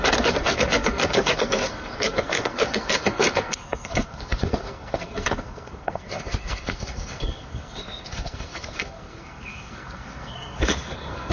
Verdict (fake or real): fake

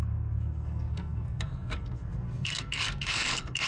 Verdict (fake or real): fake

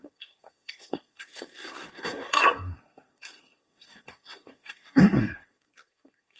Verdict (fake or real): fake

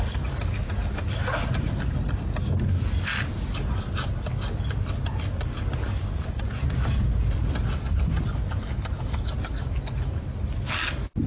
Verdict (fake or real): real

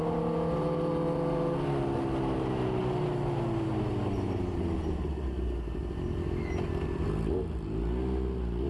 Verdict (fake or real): real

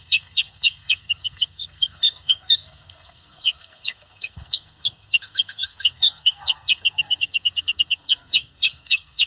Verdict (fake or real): fake